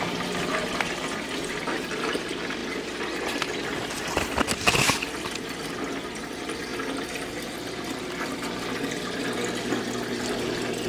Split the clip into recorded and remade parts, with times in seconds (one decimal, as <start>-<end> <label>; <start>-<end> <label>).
0.0-10.9 recorded